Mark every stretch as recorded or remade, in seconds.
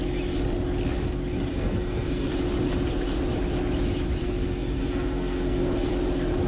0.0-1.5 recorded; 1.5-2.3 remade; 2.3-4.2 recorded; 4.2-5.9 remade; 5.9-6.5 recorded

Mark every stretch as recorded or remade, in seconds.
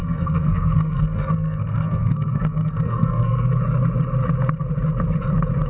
0.0-3.5 remade; 3.5-5.7 recorded